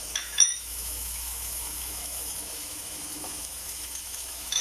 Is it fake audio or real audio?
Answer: fake